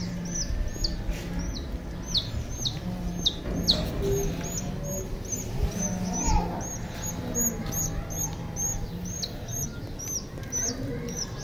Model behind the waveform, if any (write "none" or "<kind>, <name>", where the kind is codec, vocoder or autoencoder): none